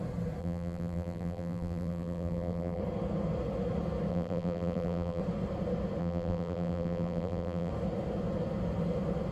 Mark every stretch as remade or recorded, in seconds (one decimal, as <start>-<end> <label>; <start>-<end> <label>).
0.0-0.4 recorded; 0.4-2.8 remade; 2.8-4.1 recorded; 4.1-5.2 remade; 5.2-6.0 recorded; 6.0-7.7 remade; 7.7-9.3 recorded